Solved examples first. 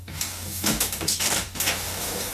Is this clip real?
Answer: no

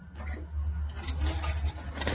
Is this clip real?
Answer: yes